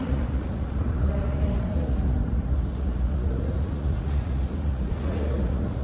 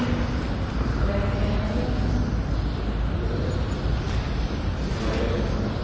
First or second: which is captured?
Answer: second